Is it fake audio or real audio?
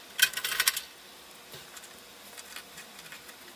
real